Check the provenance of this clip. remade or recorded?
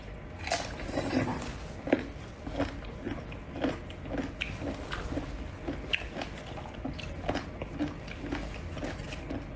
recorded